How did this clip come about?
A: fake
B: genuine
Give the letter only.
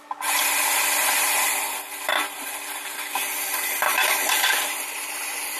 A